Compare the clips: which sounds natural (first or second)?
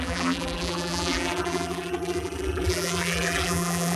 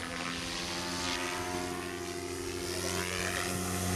second